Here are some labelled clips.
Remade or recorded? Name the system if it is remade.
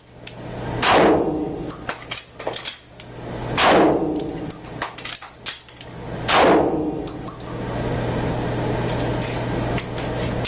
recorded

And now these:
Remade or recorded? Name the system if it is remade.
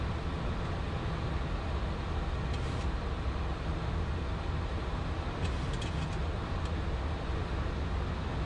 recorded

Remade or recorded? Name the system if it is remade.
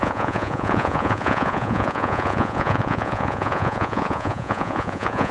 remade, vocoder, Vocos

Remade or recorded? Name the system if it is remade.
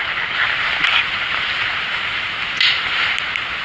recorded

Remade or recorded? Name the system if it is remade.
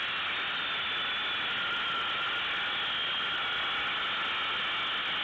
recorded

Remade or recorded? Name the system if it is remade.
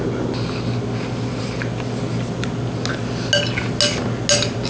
recorded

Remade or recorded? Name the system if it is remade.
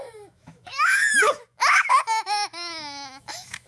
remade, autoencoder, DAC-VAE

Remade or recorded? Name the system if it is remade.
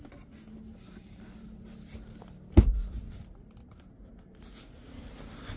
recorded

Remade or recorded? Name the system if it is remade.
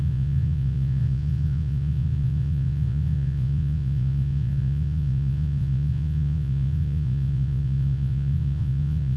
remade, vocoder, Vocos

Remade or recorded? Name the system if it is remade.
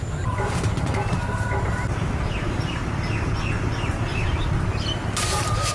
recorded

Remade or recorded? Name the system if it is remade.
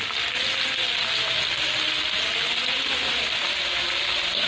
recorded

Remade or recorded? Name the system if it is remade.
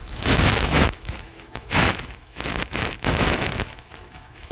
remade, autoencoder, DAC-VAE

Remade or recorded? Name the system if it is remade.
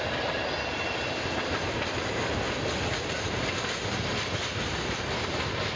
recorded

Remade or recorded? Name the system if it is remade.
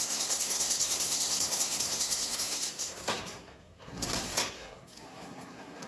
remade, codec, SNAC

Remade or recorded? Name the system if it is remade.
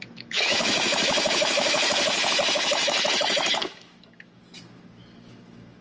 remade, autoencoder, DAC-VAE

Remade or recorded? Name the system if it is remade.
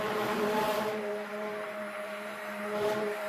remade, vocoder, BigVGAN v2